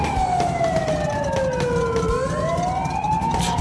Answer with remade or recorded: recorded